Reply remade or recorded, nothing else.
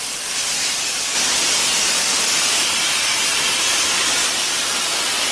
remade